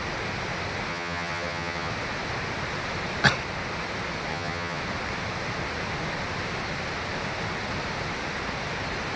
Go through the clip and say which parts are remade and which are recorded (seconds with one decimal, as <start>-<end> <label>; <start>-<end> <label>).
0.0-0.9 recorded; 0.9-1.9 remade; 1.9-4.3 recorded; 4.3-4.8 remade; 4.8-9.2 recorded